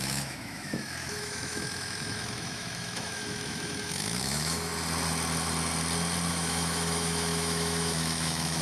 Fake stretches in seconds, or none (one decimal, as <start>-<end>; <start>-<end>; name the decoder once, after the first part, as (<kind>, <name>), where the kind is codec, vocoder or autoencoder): 0.0-4.7 (autoencoder, DAC-VAE); 6.3-8.6

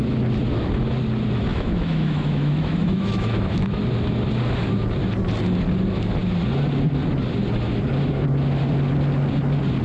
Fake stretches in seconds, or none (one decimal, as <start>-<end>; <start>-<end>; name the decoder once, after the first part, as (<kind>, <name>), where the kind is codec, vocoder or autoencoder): 1.5-3.8 (autoencoder, DAC-VAE)